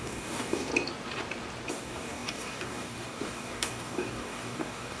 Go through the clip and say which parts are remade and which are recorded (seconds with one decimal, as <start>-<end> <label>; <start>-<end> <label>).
0.0-0.7 remade; 0.7-1.7 recorded; 1.7-5.0 remade